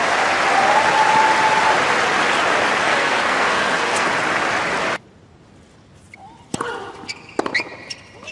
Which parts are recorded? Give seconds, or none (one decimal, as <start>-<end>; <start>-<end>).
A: 0.0-2.8; 4.1-8.3